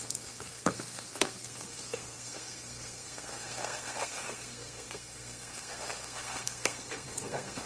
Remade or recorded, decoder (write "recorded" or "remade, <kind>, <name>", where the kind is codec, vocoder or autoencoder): remade, codec, SNAC